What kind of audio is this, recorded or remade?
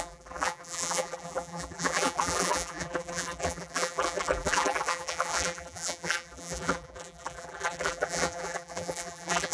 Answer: remade